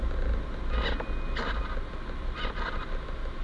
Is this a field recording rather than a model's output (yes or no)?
yes